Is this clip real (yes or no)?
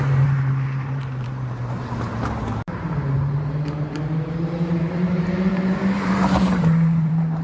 no